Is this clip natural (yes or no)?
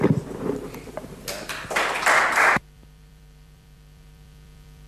no